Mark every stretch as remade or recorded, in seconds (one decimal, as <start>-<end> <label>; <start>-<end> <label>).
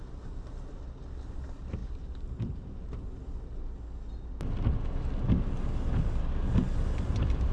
0.0-7.5 recorded